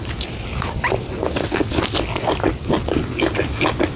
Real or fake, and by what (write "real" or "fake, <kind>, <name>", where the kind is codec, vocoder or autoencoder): real